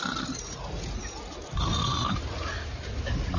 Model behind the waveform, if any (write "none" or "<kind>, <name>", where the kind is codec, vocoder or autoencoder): none